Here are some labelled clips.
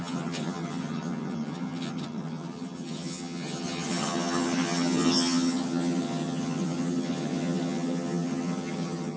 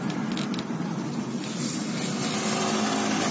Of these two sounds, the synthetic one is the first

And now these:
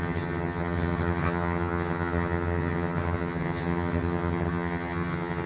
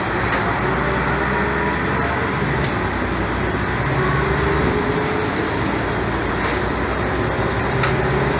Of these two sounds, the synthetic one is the first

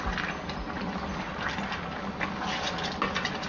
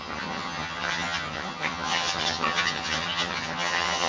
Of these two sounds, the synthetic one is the second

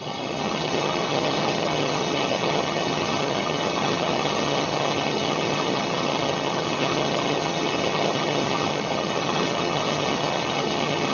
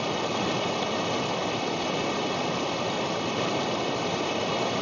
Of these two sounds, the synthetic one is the first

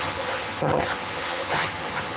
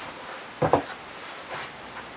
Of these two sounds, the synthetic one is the first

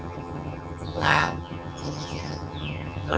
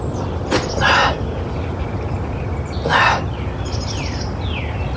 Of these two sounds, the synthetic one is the first